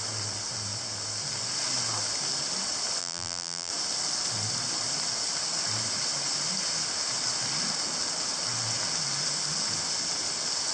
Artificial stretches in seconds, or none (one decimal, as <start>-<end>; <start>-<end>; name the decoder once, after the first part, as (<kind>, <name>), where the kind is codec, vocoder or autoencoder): 3.0-3.7 (vocoder, BigVGAN v2)